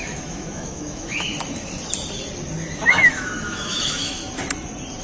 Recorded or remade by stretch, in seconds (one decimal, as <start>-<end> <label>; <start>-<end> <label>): 0.0-1.3 remade; 1.3-2.9 recorded; 2.9-4.2 remade; 4.2-5.0 recorded